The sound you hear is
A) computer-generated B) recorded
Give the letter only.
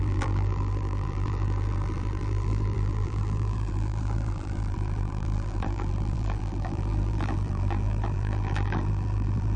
A